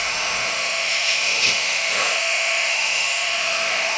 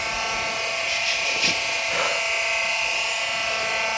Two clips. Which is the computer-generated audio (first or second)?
first